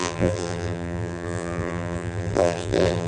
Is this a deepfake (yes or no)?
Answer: yes